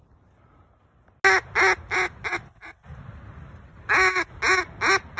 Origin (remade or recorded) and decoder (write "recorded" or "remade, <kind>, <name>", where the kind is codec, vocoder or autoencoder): recorded